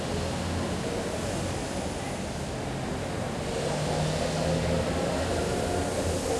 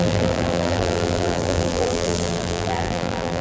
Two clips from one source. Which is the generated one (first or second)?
second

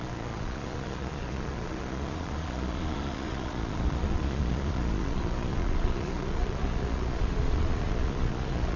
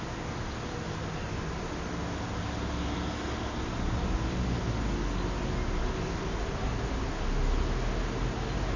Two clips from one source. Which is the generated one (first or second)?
first